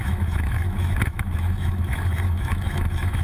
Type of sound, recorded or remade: remade